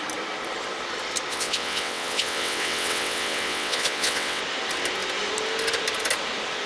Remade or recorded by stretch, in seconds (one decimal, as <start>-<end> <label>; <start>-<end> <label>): 0.0-1.3 recorded; 1.3-4.4 remade; 4.4-6.7 recorded